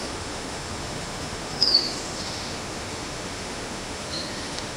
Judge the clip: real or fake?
fake